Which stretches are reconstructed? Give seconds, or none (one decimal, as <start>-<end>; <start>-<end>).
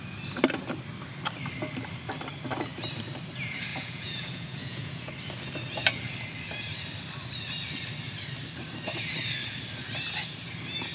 3.7-5.1